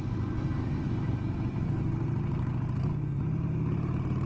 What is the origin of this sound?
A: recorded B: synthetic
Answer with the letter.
A